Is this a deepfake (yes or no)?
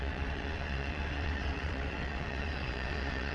yes